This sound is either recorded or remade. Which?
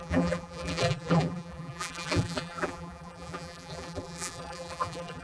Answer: remade